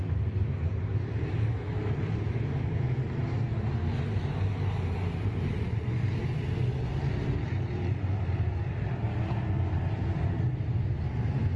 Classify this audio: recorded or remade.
recorded